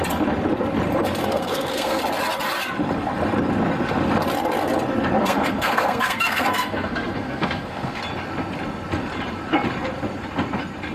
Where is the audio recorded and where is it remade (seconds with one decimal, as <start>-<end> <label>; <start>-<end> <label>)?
0.0-1.2 recorded; 1.2-2.0 remade; 2.0-5.2 recorded; 5.2-8.0 remade; 8.0-10.9 recorded